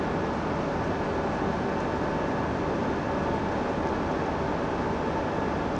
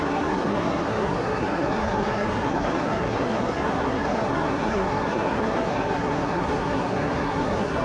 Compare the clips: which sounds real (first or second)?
first